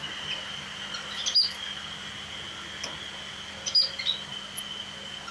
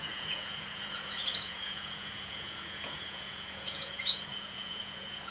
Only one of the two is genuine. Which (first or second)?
first